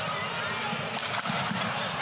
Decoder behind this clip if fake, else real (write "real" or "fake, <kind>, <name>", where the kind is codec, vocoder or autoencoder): real